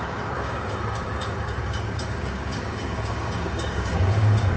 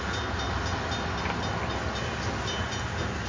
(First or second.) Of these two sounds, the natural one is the second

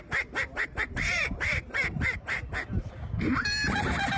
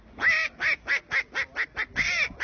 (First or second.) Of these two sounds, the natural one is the second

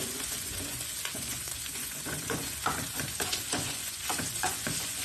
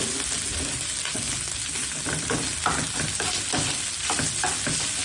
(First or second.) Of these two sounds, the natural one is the second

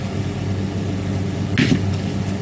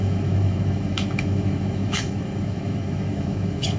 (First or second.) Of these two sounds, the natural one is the first